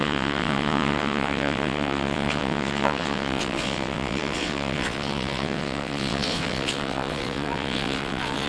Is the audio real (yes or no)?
no